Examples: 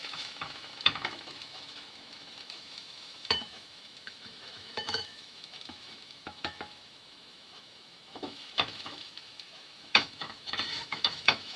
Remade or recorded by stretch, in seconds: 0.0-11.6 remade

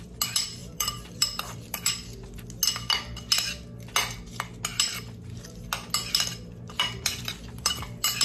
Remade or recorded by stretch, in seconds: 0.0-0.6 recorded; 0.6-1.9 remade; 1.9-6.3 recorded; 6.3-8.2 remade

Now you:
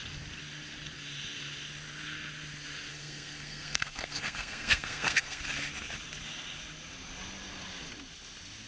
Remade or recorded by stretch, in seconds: 0.0-2.9 recorded; 2.9-5.4 remade; 5.4-8.7 recorded

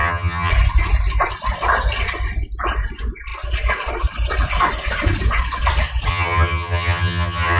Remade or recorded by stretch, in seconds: 0.0-0.5 remade; 0.5-6.1 recorded; 6.1-7.6 remade